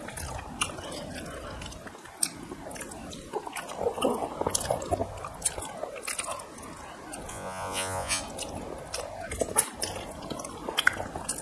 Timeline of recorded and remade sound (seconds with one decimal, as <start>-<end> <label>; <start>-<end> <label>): 0.0-7.3 recorded; 7.3-8.2 remade; 8.2-11.4 recorded